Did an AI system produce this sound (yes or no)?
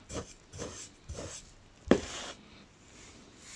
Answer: no